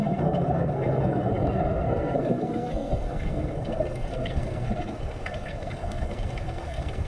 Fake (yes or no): yes